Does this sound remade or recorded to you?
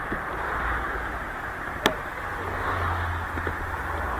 remade